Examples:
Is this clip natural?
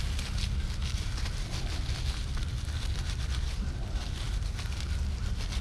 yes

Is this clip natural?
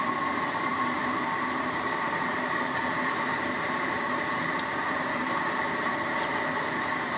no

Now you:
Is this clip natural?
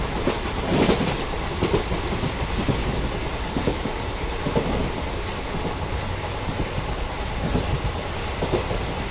yes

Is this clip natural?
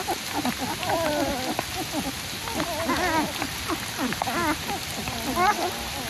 yes